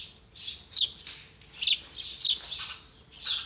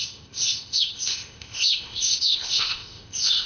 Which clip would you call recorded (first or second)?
first